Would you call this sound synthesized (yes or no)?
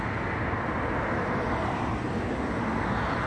no